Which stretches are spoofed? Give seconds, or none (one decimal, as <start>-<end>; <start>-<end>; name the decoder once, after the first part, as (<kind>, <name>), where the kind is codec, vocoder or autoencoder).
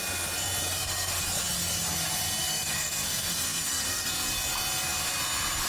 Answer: 0.7-1.2 (codec, SNAC); 2.4-4.1